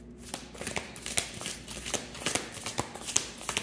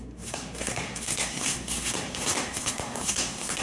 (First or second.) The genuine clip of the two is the first